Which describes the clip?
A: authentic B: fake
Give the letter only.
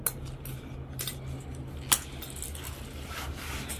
A